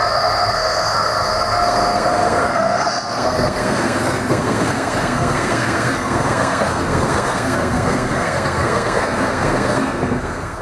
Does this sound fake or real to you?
fake